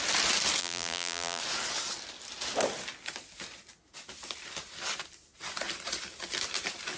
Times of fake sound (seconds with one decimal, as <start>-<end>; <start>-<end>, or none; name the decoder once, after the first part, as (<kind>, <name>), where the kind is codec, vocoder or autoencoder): 0.6-1.4 (vocoder, BigVGAN v2)